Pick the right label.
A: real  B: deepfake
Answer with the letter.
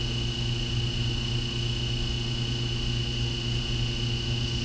A